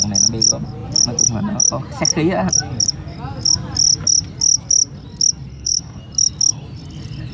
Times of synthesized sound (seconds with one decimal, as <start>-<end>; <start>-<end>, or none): 5.5-6.0